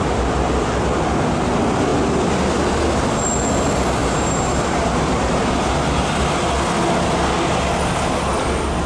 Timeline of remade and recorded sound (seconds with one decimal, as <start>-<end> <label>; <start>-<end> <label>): 0.0-4.0 recorded; 4.0-5.5 remade; 5.5-8.9 recorded